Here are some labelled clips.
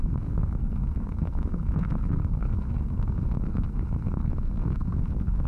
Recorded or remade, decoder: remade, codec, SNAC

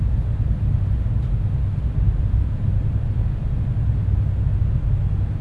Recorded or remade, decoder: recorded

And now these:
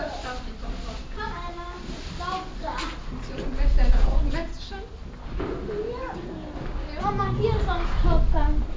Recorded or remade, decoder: recorded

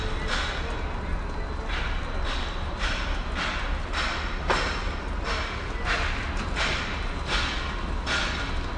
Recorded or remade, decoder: recorded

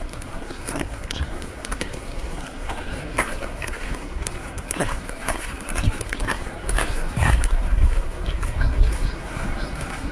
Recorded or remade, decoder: remade, codec, SNAC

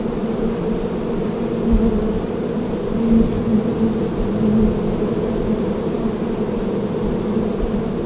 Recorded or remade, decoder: recorded